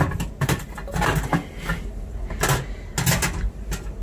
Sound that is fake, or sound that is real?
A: real